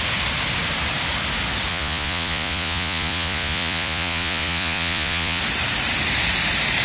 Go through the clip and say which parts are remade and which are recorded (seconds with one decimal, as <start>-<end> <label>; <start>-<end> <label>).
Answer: 0.0-1.7 recorded; 1.7-5.4 remade; 5.4-6.8 recorded